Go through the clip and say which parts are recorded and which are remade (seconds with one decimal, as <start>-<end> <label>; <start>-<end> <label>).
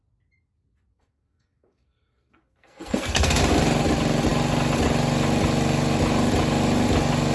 0.0-0.9 recorded; 0.9-3.4 remade; 3.4-7.3 recorded